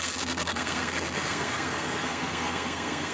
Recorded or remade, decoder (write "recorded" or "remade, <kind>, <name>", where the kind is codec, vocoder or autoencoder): remade, codec, SNAC